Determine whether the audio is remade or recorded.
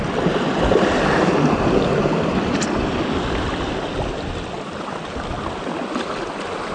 recorded